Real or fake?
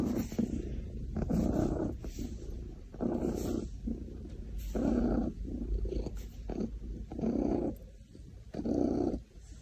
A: real